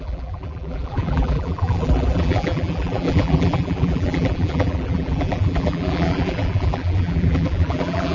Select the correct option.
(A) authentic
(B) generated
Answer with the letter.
B